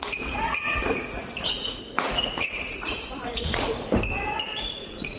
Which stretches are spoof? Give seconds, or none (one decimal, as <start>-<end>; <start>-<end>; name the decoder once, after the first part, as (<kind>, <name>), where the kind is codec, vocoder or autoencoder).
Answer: 0.0-3.7 (vocoder, Vocos); 4.7-5.2